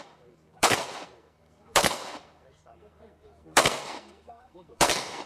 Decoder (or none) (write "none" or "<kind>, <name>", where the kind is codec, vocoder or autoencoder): codec, SNAC